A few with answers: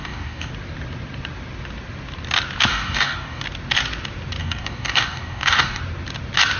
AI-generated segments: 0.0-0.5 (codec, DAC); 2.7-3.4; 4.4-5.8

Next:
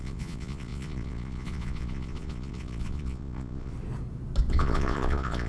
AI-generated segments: 0.0-3.7 (vocoder, Vocos); 4.5-5.5

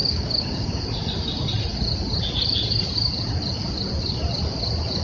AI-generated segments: 0.0-0.8 (codec, DAC)